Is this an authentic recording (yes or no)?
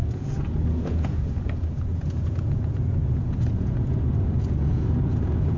no